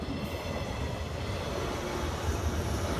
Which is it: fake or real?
real